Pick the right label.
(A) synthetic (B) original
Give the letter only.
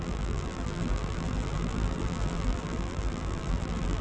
A